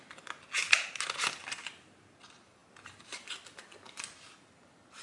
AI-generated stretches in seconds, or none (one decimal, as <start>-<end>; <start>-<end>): none